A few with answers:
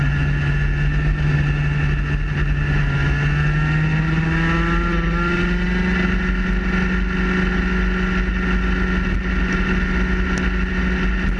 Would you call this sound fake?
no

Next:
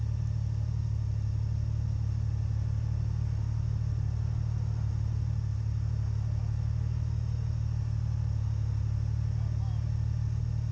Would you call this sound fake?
no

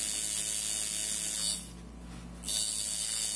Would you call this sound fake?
no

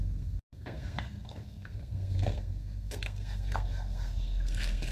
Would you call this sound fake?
yes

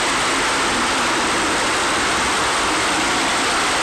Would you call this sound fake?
no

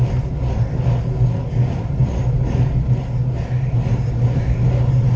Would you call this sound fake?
no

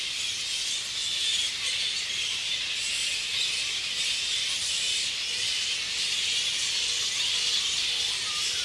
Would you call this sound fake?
no